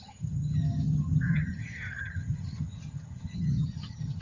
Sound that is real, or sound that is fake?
fake